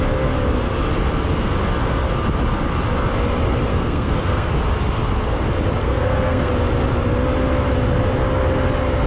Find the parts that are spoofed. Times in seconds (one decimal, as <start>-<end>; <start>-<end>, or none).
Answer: 3.7-4.5; 5.8-6.5